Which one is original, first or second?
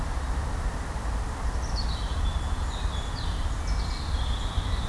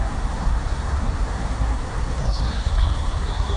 first